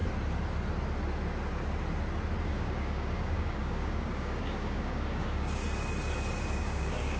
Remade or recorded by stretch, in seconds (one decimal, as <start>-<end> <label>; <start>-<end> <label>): 0.0-2.4 recorded; 2.4-5.6 remade; 5.6-6.5 recorded; 6.5-7.2 remade